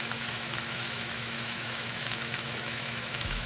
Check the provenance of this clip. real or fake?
fake